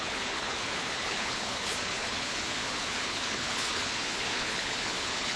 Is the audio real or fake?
fake